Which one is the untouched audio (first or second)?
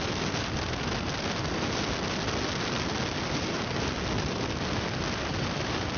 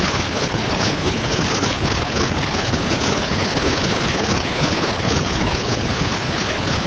first